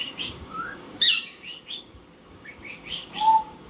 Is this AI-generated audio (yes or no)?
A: yes